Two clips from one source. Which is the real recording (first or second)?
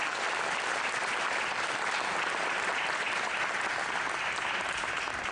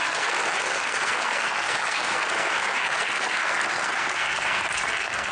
first